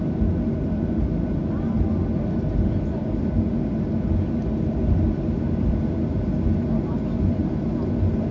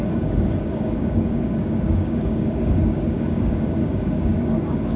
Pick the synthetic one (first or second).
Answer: second